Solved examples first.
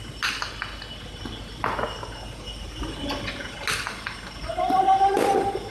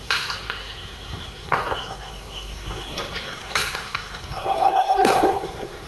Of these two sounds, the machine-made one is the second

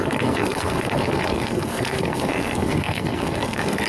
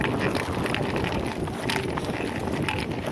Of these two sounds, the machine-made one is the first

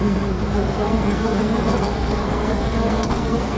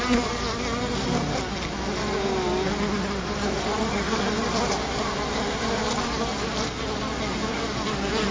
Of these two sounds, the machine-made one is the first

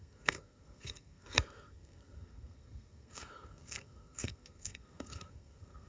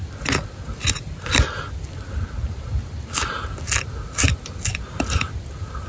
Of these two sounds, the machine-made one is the first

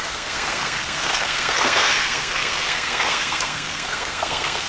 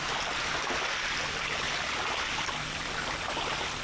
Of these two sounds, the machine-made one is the first